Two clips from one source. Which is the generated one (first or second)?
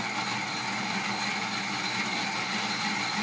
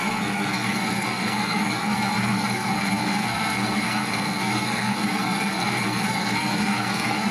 second